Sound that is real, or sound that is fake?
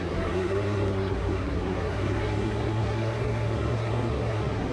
fake